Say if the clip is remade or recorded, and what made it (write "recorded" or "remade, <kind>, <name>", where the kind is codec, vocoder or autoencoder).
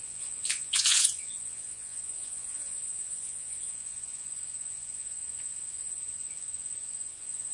remade, vocoder, Vocos